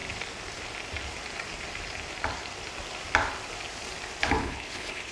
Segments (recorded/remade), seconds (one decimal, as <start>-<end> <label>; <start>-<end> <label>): 0.0-4.4 recorded; 4.4-5.1 remade